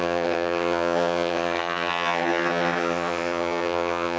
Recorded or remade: remade